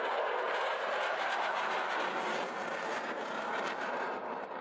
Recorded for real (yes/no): no